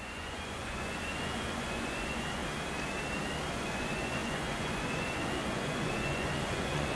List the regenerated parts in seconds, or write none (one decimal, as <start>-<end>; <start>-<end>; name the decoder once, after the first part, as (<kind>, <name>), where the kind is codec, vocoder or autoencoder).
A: 0.0-2.4 (vocoder, Vocos); 3.5-7.0